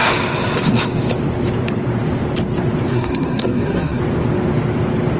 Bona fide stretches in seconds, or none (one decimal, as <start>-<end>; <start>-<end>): 0.0-2.9; 4.0-5.2